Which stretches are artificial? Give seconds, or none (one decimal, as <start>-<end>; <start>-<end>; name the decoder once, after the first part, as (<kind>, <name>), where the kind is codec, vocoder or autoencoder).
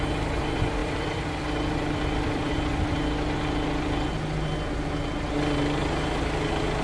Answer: 0.8-2.5 (vocoder, BigVGAN v2)